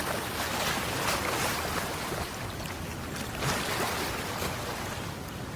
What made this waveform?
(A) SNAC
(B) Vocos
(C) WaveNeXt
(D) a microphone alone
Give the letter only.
D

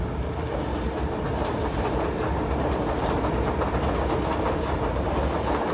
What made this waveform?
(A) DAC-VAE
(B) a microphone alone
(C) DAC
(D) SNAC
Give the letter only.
B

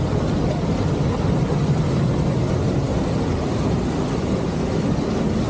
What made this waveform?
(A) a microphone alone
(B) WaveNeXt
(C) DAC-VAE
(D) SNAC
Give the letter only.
A